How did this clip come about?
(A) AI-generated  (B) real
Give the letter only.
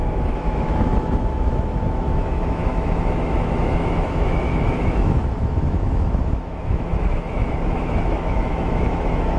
A